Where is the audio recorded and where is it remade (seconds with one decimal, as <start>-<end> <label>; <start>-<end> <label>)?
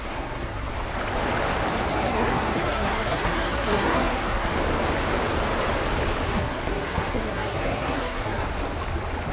0.0-0.7 remade; 0.7-1.9 recorded; 1.9-4.5 remade; 4.5-6.4 recorded; 6.4-8.5 remade; 8.5-9.3 recorded